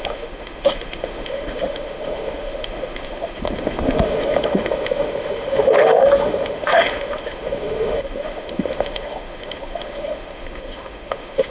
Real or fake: fake